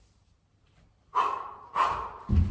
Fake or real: real